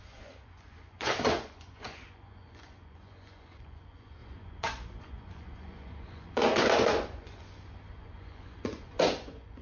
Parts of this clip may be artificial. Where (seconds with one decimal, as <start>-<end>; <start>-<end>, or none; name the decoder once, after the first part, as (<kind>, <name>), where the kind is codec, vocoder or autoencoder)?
0.0-9.6 (vocoder, Vocos)